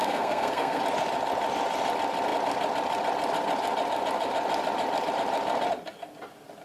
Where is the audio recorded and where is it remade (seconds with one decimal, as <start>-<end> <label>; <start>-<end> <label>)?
0.0-0.8 remade; 0.8-6.6 recorded